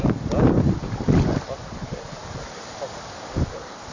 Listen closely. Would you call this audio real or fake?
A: real